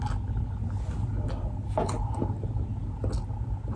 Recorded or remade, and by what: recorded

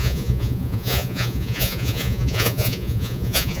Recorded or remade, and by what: remade, vocoder, Vocos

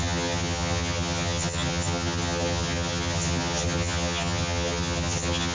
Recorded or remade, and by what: remade, vocoder, HiFi-GAN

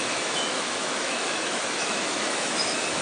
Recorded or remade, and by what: remade, autoencoder, DAC-VAE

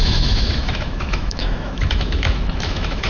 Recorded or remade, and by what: remade, autoencoder, DAC-VAE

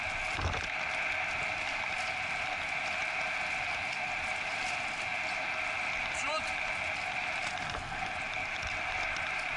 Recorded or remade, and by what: recorded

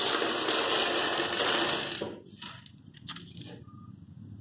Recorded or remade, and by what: recorded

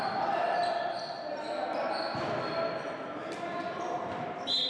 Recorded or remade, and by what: recorded